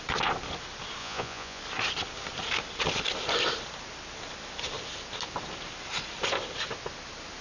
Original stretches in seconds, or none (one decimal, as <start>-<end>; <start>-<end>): 0.0-1.0; 1.6-7.4